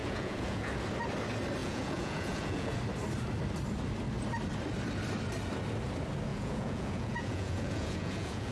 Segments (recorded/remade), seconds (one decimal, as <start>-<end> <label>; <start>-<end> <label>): 0.0-0.7 remade; 0.7-1.6 recorded; 1.6-2.8 remade; 2.8-6.3 recorded; 6.3-8.5 remade

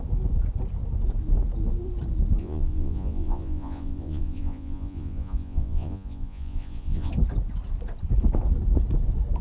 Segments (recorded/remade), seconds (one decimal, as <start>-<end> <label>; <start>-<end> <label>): 0.0-2.4 recorded; 2.4-7.1 remade; 7.1-9.4 recorded

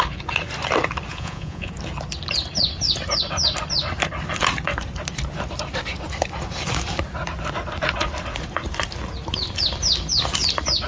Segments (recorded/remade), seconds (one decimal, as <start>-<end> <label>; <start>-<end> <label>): 0.0-1.1 recorded; 1.1-1.7 remade; 1.7-10.9 recorded

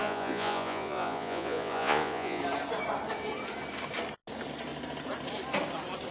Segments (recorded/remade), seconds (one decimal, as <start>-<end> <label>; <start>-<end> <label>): 0.0-2.4 remade; 2.4-6.1 recorded

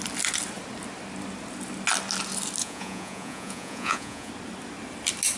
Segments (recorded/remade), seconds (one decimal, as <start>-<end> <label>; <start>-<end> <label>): 0.0-2.6 recorded; 2.6-4.3 remade; 4.3-5.4 recorded

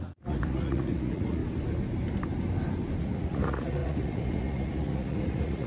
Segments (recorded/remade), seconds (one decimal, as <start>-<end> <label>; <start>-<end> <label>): 0.0-1.4 remade; 1.4-3.0 recorded; 3.0-5.7 remade

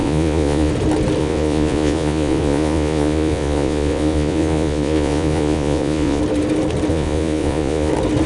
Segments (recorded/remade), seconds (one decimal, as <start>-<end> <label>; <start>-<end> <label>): 0.0-0.7 remade; 0.7-1.2 recorded; 1.2-6.2 remade; 6.2-6.9 recorded; 6.9-7.9 remade; 7.9-8.3 recorded